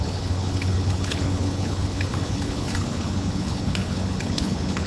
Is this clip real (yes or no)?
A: no